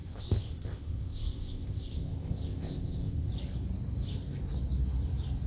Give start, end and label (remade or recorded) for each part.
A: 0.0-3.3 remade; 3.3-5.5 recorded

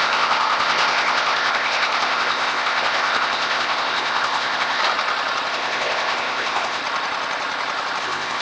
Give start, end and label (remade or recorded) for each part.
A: 0.0-4.8 remade; 4.8-5.5 recorded; 5.5-6.8 remade; 6.8-8.0 recorded; 8.0-8.4 remade

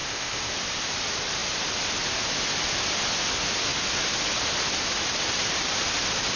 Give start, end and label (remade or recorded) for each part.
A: 0.0-0.5 remade; 0.5-6.4 recorded

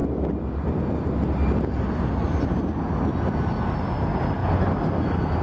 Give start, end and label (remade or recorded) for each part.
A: 0.0-5.4 recorded

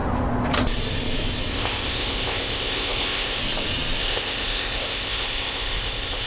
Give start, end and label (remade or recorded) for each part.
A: 0.0-1.5 recorded; 1.5-3.4 remade; 3.4-4.0 recorded; 4.0-6.3 remade

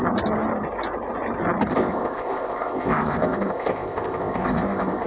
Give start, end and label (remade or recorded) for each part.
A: 0.0-1.7 recorded; 1.7-5.1 remade

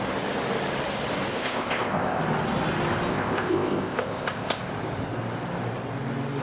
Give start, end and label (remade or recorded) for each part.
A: 0.0-1.3 recorded; 1.3-2.2 remade; 2.2-3.1 recorded; 3.1-4.7 remade; 4.7-6.4 recorded

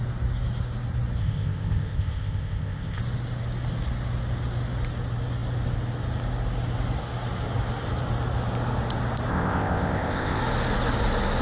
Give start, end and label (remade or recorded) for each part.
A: 0.0-1.2 recorded; 1.2-3.0 remade; 3.0-9.3 recorded; 9.3-10.4 remade; 10.4-11.4 recorded